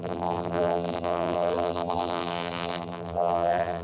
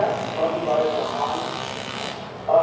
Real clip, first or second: second